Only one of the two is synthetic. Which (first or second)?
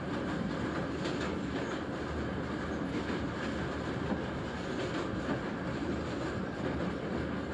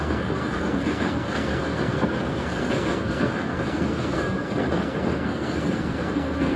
second